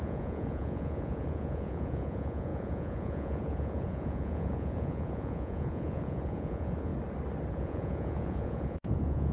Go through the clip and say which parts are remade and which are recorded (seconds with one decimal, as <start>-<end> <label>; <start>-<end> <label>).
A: 0.0-6.9 remade; 6.9-7.5 recorded; 7.5-9.3 remade